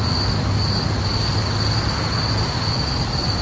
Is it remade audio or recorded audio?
recorded